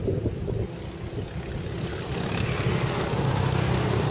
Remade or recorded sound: recorded